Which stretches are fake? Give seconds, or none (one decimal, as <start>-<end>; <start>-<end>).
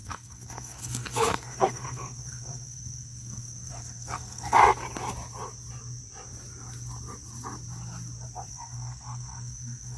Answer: 0.0-4.6; 8.5-10.0